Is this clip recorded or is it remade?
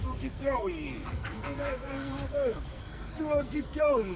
remade